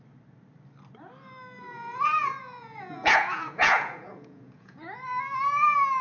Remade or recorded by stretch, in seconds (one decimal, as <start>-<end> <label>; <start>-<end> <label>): 0.0-1.7 recorded; 1.7-4.8 remade; 4.8-6.0 recorded

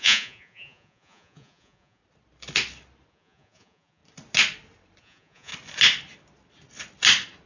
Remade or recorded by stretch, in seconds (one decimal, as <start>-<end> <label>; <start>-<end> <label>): 0.0-2.0 remade; 2.0-3.1 recorded; 3.1-4.0 remade; 4.0-5.0 recorded; 5.0-5.5 remade; 5.5-7.5 recorded

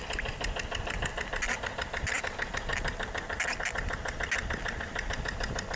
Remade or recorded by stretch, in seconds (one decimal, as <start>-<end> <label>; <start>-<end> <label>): 0.0-5.8 recorded